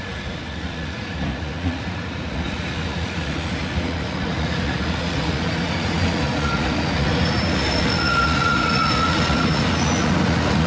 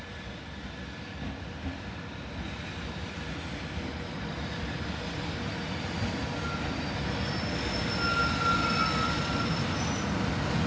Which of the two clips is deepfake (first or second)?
first